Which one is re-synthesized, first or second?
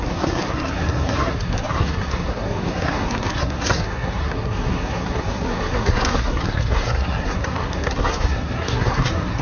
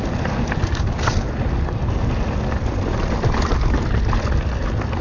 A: first